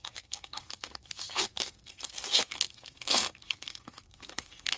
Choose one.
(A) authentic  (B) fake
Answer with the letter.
B